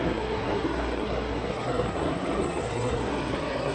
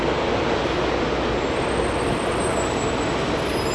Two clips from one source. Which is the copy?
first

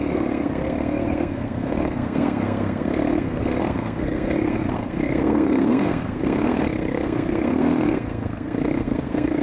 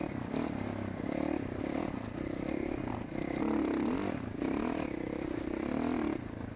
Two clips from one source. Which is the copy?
first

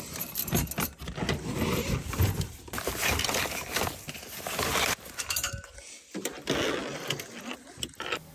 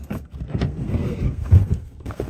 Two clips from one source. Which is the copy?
second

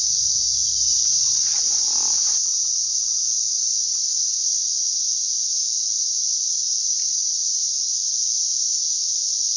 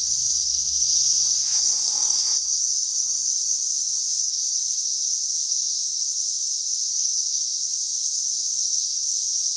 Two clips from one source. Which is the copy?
second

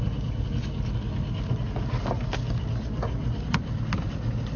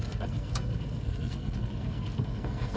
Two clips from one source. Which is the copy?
second